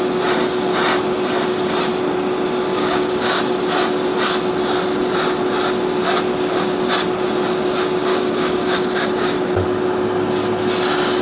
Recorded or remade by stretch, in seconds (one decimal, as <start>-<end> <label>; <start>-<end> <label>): 0.0-2.7 recorded; 2.7-3.4 remade; 3.4-8.1 recorded; 8.1-9.5 remade; 9.5-11.2 recorded